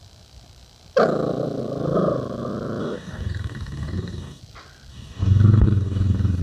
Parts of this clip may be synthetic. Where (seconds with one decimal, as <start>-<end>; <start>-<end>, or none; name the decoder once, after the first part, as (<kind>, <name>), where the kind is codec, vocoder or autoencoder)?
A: 2.8-4.4 (codec, DAC); 4.9-6.4